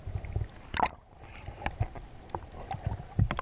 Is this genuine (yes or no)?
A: yes